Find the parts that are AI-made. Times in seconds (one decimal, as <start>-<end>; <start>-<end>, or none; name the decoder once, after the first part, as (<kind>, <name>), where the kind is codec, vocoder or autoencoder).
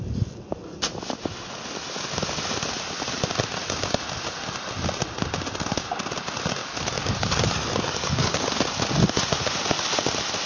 6.6-8.6 (codec, DAC)